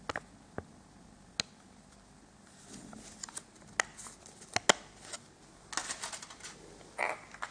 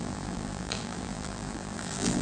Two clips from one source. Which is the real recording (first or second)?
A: first